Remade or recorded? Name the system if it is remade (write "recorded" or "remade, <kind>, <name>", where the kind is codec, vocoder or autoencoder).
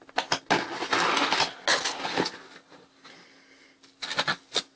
recorded